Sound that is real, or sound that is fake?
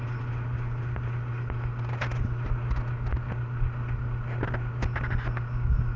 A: real